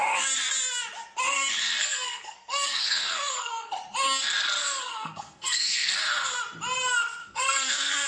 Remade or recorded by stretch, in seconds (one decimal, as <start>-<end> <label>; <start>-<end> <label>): 0.0-1.8 recorded; 1.8-3.7 remade; 3.7-4.6 recorded; 4.6-5.9 remade; 5.9-7.2 recorded; 7.2-8.1 remade